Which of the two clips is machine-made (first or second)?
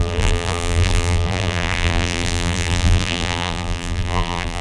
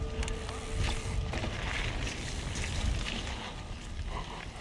first